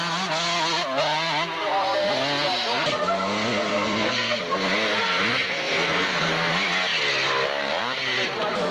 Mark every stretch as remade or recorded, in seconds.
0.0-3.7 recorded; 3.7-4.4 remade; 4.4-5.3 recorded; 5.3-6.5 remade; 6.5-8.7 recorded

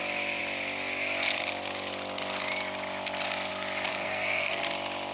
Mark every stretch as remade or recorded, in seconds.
0.0-3.9 recorded; 3.9-4.6 remade; 4.6-5.1 recorded

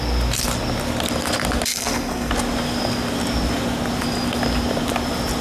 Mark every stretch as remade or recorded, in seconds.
0.0-1.7 recorded; 1.7-2.3 remade; 2.3-5.4 recorded